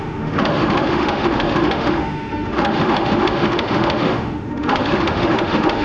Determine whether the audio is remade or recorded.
remade